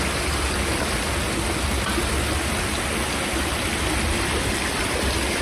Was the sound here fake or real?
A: real